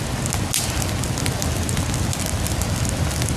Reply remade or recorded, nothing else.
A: recorded